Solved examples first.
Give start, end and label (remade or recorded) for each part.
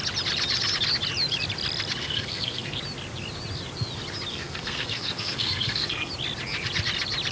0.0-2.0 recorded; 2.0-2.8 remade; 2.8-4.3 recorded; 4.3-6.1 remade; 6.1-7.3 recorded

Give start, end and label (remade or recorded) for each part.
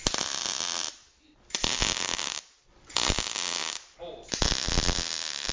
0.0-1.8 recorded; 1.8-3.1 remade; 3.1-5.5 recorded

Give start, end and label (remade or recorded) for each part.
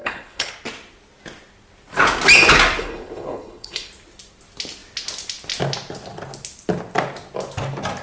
0.0-0.5 remade; 0.5-2.8 recorded; 2.8-3.9 remade; 3.9-8.0 recorded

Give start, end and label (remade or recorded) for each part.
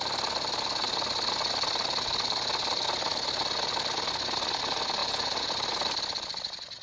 0.0-5.0 recorded; 5.0-5.5 remade; 5.5-6.8 recorded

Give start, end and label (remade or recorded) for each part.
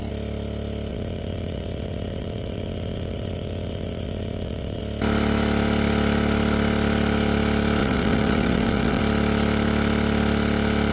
0.0-0.9 recorded; 0.9-4.8 remade; 4.8-7.8 recorded; 7.8-9.0 remade; 9.0-10.9 recorded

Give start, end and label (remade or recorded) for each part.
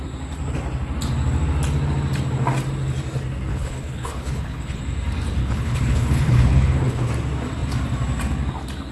0.0-3.5 recorded; 3.5-4.8 remade; 4.8-5.4 recorded; 5.4-7.1 remade; 7.1-8.9 recorded